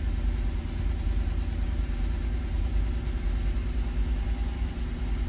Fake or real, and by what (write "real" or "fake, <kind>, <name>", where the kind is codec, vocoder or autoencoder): fake, vocoder, BigVGAN v2